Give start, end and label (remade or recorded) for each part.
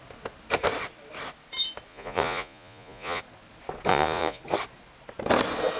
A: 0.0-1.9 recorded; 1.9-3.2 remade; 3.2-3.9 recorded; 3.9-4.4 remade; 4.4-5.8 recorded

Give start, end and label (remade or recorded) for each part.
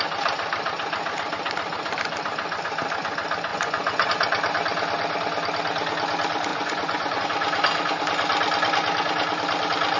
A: 0.0-3.5 recorded; 3.5-4.1 remade; 4.1-6.5 recorded; 6.5-7.2 remade; 7.2-10.0 recorded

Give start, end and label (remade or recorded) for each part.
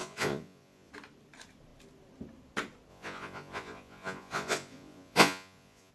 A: 0.0-0.9 remade; 0.9-2.9 recorded; 2.9-5.9 remade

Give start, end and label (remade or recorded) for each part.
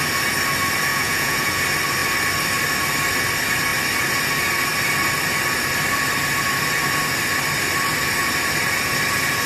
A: 0.0-0.9 recorded; 0.9-1.6 remade; 1.6-9.5 recorded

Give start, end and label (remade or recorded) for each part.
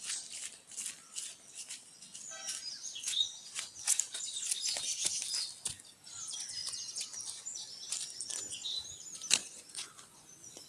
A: 0.0-3.0 recorded; 3.0-4.1 remade; 4.1-9.4 recorded; 9.4-10.7 remade